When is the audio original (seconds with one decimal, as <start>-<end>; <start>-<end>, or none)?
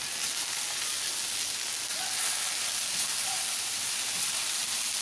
0.0-5.0